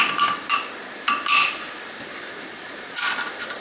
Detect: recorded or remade recorded